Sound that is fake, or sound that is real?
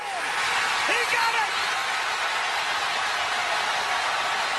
real